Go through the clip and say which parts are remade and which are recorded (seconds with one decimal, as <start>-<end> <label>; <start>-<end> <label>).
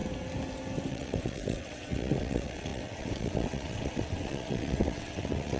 0.0-0.9 recorded; 0.9-5.6 remade